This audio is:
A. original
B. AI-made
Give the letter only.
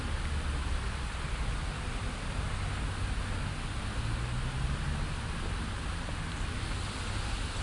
A